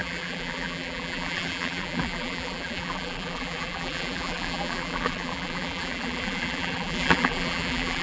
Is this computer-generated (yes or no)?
yes